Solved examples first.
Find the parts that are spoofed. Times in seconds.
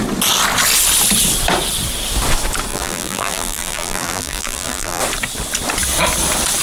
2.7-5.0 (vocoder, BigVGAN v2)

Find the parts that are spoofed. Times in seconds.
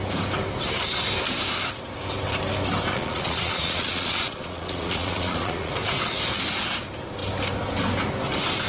2.9-5.7 (vocoder, Vocos)